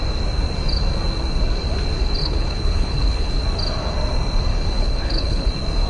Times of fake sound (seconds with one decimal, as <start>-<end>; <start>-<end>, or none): 2.2-3.3; 4.5-5.5